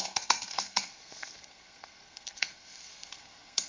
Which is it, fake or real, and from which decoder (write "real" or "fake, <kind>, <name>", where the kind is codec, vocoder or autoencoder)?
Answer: fake, codec, SNAC